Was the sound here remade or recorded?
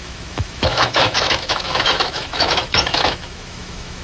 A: remade